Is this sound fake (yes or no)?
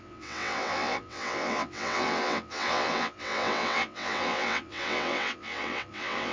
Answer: yes